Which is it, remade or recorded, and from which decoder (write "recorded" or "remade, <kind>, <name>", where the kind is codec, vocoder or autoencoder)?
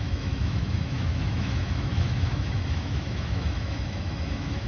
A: remade, autoencoder, DAC-VAE